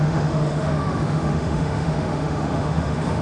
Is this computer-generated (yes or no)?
yes